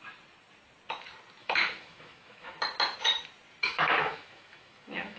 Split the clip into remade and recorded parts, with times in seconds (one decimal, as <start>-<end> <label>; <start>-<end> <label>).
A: 0.0-1.4 recorded; 1.4-2.6 remade; 2.6-3.6 recorded; 3.6-5.2 remade